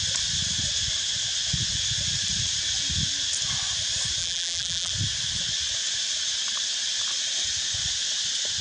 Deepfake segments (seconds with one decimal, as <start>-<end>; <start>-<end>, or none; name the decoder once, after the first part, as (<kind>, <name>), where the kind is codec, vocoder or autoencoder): 4.2-4.9 (vocoder, BigVGAN v2)